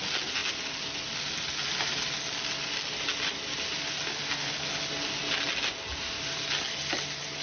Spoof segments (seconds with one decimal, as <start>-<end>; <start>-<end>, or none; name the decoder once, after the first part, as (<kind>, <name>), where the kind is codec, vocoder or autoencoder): 5.9-6.4 (vocoder, BigVGAN v2)